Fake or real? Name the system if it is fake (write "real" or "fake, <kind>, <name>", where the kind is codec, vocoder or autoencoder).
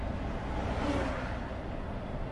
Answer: real